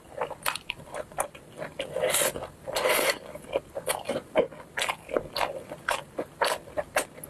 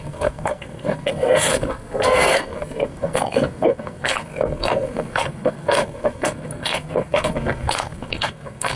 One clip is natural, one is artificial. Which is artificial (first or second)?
second